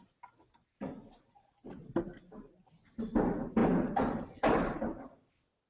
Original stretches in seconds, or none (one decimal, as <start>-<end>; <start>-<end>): 0.0-5.7